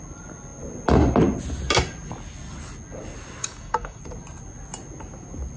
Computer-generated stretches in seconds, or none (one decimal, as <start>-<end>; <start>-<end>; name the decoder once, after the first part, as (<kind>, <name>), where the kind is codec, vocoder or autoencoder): 3.4-4.0 (codec, DAC)